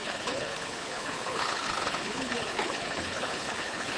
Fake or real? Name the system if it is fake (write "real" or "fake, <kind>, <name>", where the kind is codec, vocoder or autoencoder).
fake, codec, HILCodec